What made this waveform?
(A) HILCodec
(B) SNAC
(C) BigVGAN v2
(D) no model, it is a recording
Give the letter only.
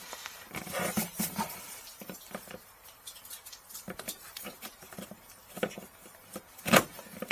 C